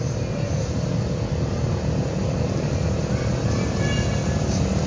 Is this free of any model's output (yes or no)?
yes